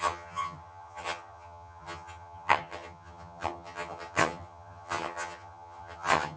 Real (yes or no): no